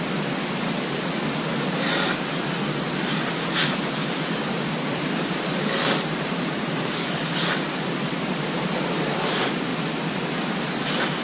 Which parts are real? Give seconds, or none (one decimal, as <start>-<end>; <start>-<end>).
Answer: 0.0-4.0; 8.2-9.7; 10.6-11.2